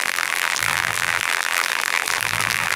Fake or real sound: fake